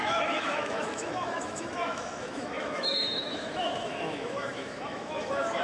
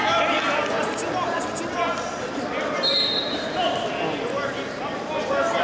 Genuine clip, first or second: second